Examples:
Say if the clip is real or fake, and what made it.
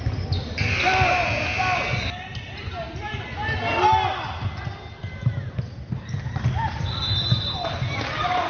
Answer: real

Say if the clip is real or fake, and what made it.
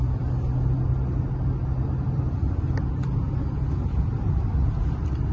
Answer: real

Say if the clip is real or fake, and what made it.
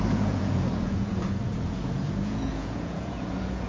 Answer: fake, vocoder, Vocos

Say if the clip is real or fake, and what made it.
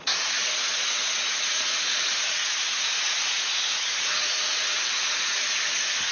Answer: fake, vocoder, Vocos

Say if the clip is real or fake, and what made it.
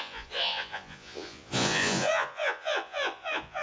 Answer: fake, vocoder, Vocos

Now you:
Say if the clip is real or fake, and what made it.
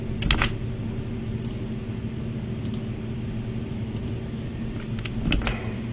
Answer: real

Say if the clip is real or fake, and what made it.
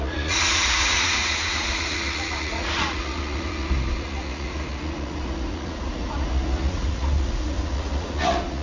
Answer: fake, vocoder, Vocos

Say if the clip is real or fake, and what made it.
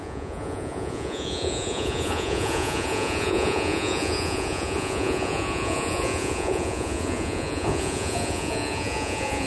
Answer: fake, vocoder, Vocos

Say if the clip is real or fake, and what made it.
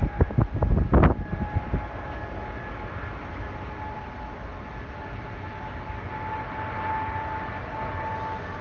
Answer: real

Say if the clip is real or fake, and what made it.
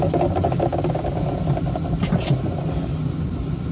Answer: real